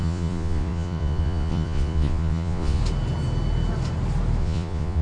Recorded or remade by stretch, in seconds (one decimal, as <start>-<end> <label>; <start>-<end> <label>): 0.0-2.8 remade; 2.8-4.4 recorded; 4.4-5.0 remade